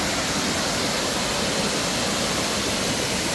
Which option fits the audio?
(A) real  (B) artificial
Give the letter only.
A